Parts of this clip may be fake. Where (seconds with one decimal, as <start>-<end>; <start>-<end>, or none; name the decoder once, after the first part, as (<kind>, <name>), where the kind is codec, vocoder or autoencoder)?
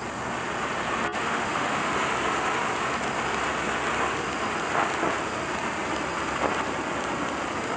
1.2-1.9 (autoencoder, DAC-VAE)